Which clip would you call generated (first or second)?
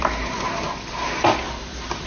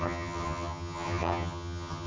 second